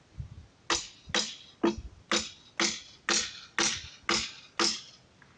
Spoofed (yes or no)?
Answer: no